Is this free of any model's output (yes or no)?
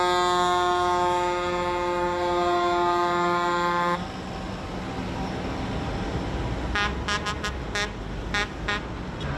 yes